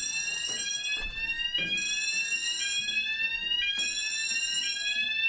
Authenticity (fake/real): real